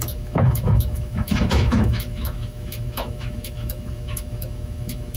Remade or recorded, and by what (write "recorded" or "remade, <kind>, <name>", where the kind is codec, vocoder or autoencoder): remade, autoencoder, DAC-VAE